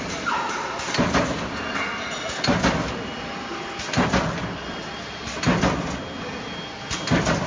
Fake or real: real